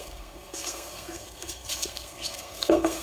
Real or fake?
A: fake